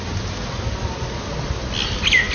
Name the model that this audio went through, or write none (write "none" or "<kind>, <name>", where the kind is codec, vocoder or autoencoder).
none